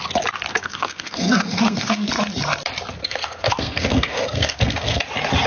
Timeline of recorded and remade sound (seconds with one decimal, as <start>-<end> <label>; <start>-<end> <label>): 0.0-0.5 recorded; 0.5-2.1 remade; 2.1-3.0 recorded; 3.0-5.0 remade; 5.0-5.5 recorded